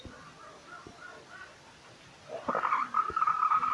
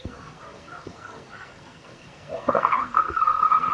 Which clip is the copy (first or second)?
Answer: second